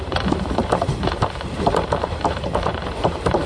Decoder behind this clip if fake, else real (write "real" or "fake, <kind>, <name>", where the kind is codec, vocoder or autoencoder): fake, vocoder, BigVGAN v2